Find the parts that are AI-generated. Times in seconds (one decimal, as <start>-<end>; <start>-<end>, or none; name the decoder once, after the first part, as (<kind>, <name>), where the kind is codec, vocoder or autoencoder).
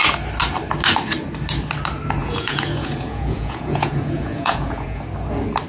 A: 2.2-5.0 (vocoder, Vocos)